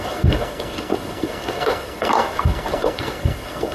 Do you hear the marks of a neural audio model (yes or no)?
yes